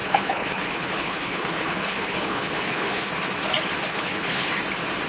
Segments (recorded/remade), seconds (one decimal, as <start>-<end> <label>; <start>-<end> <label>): 0.0-3.1 remade; 3.1-3.9 recorded; 3.9-4.5 remade; 4.5-5.1 recorded